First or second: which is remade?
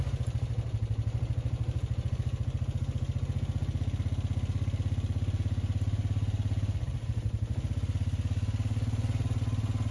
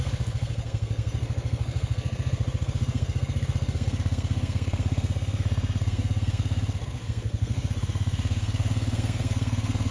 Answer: second